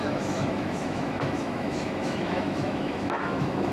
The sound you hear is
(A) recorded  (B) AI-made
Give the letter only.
B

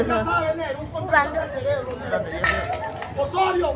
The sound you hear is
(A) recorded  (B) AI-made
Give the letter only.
A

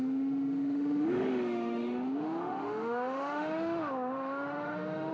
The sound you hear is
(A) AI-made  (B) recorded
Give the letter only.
A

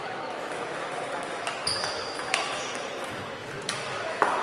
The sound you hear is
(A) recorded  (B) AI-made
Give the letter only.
B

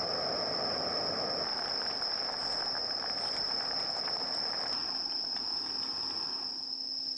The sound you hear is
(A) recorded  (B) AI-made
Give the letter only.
A